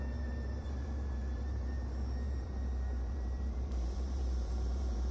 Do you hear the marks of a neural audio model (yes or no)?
yes